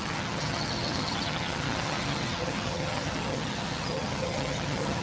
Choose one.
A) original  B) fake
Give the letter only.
B